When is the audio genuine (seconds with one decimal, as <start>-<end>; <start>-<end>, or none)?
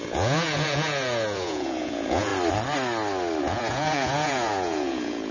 2.3-3.4